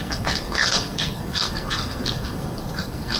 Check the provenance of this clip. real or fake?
fake